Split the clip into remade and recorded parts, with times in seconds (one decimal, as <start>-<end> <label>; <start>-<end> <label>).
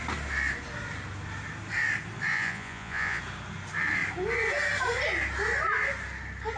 0.0-2.3 recorded; 2.3-3.2 remade; 3.2-6.6 recorded